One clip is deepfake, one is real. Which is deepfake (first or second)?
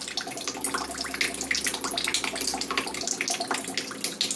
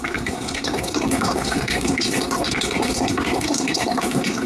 second